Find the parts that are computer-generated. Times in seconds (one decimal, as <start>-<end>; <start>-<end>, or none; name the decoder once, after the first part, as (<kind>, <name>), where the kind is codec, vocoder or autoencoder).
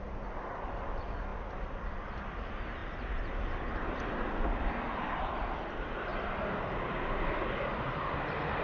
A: 1.3-1.8 (vocoder, BigVGAN v2); 6.1-7.5